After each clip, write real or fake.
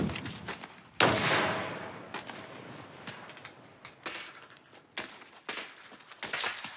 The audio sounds real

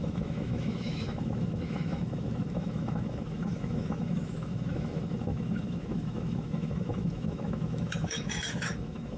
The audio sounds fake